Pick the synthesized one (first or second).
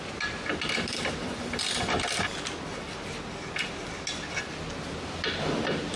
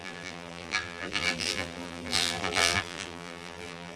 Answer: second